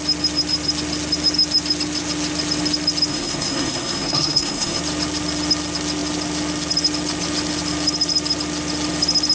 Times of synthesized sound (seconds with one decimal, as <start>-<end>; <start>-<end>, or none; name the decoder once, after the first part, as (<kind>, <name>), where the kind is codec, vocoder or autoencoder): 3.1-4.8 (codec, SNAC)